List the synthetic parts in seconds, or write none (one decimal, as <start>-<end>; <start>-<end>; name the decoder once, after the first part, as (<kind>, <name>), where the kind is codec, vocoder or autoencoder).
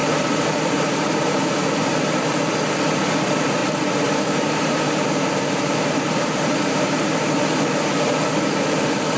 0.0-2.4 (vocoder, BigVGAN v2); 3.6-7.4